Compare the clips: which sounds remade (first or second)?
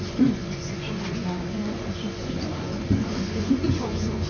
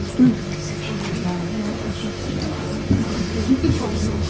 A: first